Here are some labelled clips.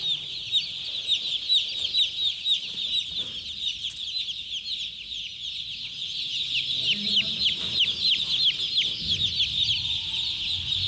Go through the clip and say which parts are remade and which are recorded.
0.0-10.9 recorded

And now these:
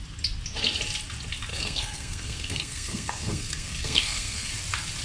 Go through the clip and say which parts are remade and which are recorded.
0.0-1.5 recorded; 1.5-4.5 remade; 4.5-5.0 recorded

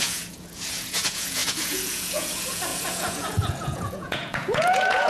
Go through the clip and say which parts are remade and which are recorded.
0.0-5.1 remade

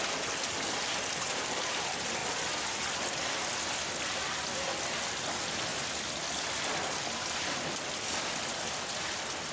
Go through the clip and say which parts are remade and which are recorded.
0.0-9.5 recorded

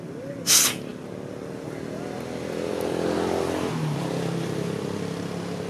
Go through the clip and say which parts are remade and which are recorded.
0.0-5.7 recorded

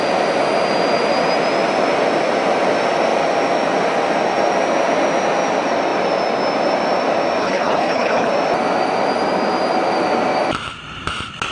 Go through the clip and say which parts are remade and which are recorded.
0.0-7.4 recorded; 7.4-8.3 remade; 8.3-11.5 recorded

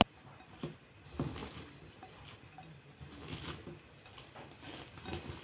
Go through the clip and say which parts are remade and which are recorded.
0.0-5.4 recorded